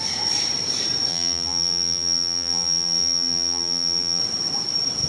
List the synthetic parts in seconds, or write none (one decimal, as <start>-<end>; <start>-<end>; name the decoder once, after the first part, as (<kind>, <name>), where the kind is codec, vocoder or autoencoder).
1.1-4.2 (vocoder, BigVGAN v2)